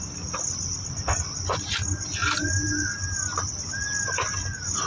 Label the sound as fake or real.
real